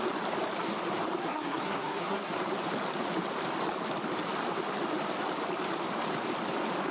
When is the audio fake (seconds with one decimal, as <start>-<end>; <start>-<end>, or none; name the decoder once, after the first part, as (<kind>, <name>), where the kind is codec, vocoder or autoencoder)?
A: 1.2-2.3 (codec, SNAC)